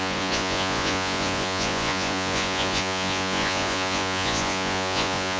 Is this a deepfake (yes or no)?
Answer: yes